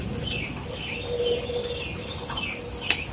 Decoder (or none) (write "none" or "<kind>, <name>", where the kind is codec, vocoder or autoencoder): none